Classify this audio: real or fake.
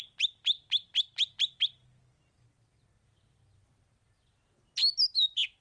real